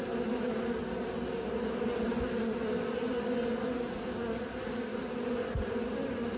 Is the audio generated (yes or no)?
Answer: no